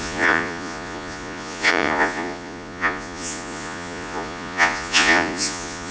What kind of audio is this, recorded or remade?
remade